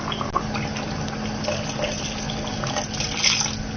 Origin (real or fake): real